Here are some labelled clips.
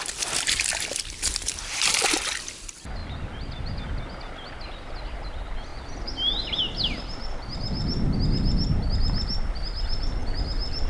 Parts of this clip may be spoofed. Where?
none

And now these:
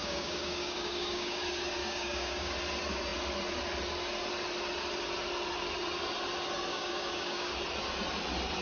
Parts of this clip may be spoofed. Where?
0.0-1.4; 1.8-2.5; 6.7-7.5

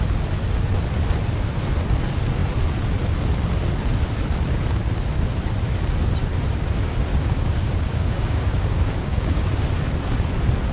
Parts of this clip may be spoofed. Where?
7.1-9.4

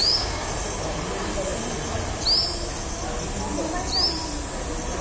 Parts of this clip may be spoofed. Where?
0.0-0.5

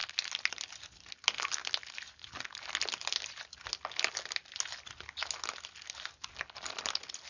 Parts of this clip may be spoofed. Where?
none

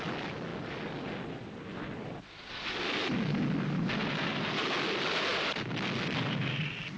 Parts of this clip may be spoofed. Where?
none

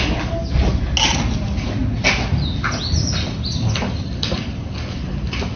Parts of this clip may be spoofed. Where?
none